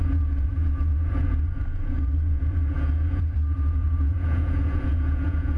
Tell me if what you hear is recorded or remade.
remade